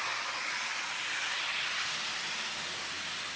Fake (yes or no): no